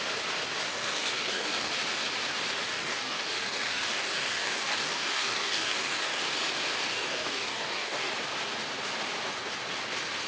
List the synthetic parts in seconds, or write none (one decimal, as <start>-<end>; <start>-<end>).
0.7-1.7; 2.7-6.2; 6.9-8.1